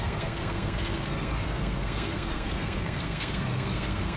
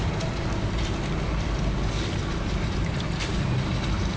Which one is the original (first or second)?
second